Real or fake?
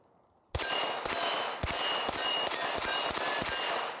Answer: real